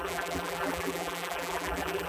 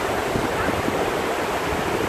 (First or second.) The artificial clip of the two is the first